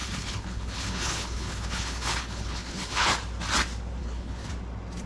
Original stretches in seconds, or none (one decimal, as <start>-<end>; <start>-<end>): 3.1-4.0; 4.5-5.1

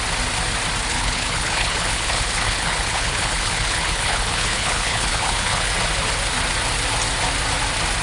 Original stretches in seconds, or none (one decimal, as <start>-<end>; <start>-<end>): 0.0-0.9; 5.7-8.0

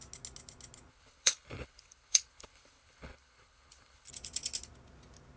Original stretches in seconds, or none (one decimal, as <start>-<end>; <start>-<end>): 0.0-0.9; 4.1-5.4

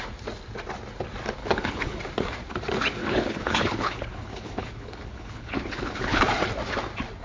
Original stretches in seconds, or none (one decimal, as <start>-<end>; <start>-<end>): 0.0-1.4; 2.0-3.0; 6.2-7.2

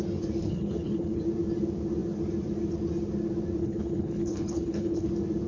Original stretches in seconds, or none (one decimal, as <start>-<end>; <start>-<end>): 0.0-0.4; 1.2-3.6; 5.1-5.5

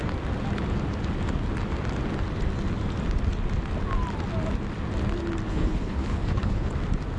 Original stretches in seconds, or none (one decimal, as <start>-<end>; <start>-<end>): 0.0-5.5; 6.7-7.2

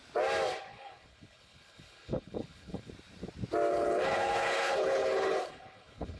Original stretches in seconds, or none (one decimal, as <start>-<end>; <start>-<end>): 0.0-0.7; 2.9-3.7

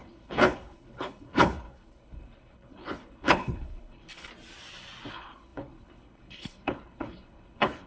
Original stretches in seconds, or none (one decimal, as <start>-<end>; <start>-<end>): 4.3-5.1